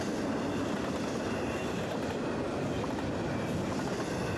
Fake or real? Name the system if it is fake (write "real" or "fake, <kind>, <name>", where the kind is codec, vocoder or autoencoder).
real